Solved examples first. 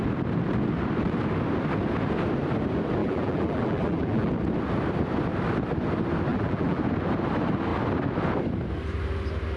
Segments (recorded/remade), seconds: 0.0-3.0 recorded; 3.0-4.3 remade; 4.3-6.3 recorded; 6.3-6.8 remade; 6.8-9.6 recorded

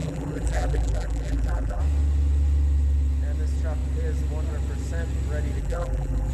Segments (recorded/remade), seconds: 0.0-1.8 remade; 1.8-5.6 recorded; 5.6-6.3 remade

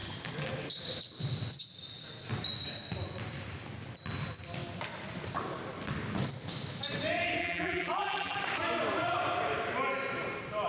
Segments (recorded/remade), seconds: 0.0-7.4 recorded; 7.4-8.4 remade; 8.4-10.7 recorded

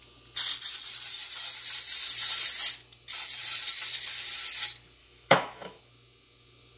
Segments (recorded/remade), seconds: 0.0-5.0 recorded; 5.0-5.8 remade; 5.8-6.8 recorded

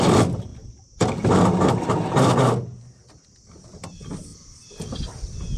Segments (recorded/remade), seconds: 0.0-5.6 recorded

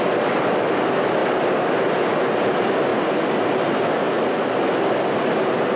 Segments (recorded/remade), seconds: 0.0-1.2 remade; 1.2-1.8 recorded; 1.8-2.9 remade; 2.9-5.8 recorded

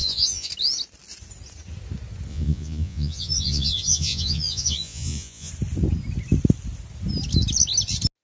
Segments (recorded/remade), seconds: 0.0-0.5 remade; 0.5-2.3 recorded; 2.3-5.5 remade; 5.5-8.2 recorded

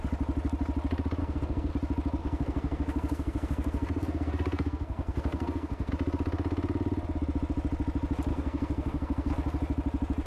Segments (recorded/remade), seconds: 0.0-1.2 recorded; 1.2-1.7 remade; 1.7-2.2 recorded; 2.2-5.9 remade; 5.9-8.3 recorded; 8.3-9.3 remade; 9.3-10.3 recorded